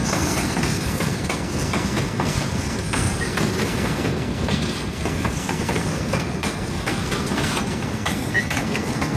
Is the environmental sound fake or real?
fake